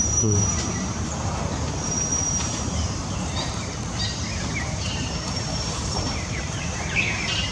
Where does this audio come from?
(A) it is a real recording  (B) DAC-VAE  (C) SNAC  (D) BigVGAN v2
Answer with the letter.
D